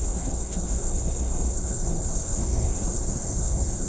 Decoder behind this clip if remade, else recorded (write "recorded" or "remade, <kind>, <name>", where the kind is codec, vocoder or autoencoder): remade, codec, SNAC